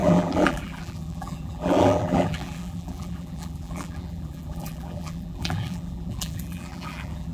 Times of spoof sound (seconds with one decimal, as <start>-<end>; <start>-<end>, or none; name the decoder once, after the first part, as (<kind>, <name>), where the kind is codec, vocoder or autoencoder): 0.0-7.3 (vocoder, BigVGAN v2)